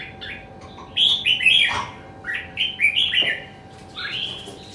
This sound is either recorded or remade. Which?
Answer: remade